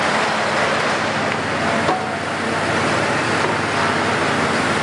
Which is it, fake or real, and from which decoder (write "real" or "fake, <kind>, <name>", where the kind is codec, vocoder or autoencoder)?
real